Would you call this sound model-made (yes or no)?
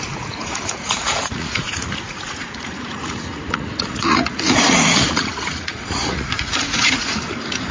yes